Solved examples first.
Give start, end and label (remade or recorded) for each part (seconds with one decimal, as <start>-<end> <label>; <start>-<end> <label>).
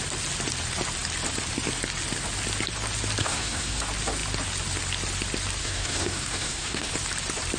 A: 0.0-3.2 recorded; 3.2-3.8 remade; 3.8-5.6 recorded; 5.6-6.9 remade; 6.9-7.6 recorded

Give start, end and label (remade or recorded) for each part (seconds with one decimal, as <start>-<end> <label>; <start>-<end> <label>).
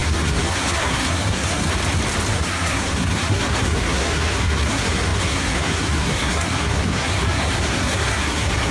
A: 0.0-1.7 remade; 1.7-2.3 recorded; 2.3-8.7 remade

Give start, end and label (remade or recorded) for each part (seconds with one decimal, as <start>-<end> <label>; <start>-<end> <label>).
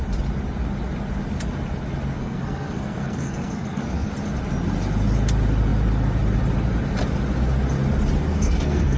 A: 0.0-2.1 recorded; 2.1-4.1 remade; 4.1-8.3 recorded; 8.3-9.0 remade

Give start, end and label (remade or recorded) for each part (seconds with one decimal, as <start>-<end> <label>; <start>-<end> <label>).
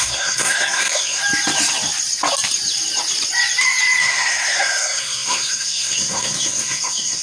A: 0.0-1.2 remade; 1.2-4.0 recorded; 4.0-7.2 remade